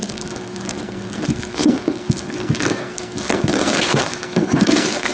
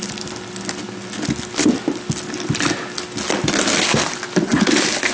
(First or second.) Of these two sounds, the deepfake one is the first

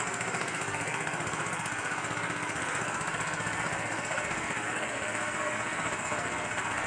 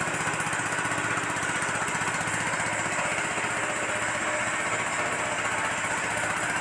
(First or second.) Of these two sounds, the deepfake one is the first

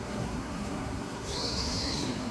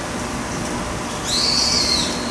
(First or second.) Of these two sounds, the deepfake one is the first